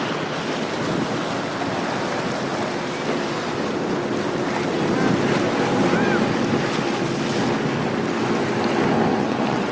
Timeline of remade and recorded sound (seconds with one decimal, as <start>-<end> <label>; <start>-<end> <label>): 0.0-9.1 recorded; 9.1-9.7 remade